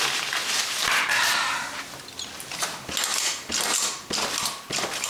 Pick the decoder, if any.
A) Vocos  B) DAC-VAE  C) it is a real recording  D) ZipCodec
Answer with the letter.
C